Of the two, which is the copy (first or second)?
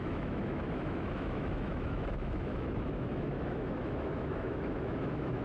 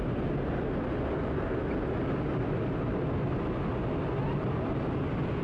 first